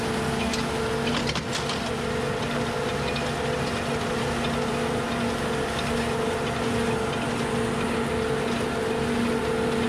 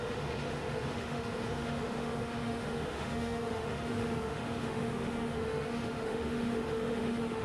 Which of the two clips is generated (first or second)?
second